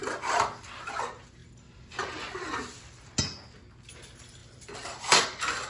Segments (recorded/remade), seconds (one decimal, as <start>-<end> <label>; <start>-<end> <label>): 0.0-4.4 recorded; 4.4-5.7 remade